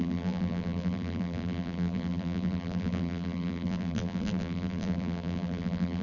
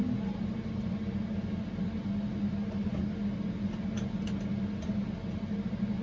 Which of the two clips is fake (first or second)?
first